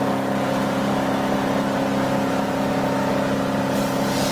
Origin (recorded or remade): recorded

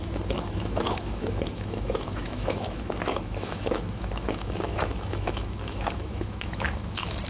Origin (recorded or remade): remade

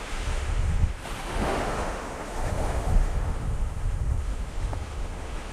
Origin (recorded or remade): remade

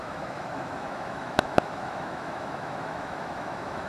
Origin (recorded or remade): remade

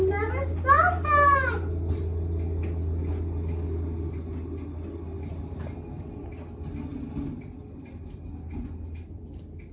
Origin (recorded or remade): recorded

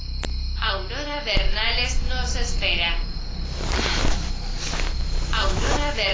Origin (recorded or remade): recorded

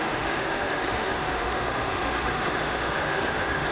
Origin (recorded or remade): remade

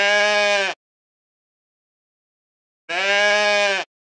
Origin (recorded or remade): recorded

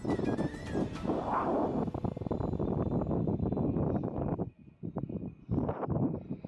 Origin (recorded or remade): recorded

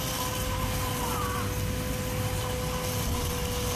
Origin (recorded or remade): recorded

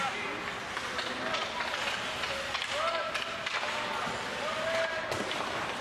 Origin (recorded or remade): recorded